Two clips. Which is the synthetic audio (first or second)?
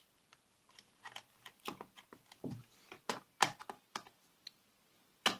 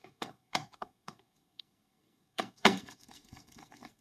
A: second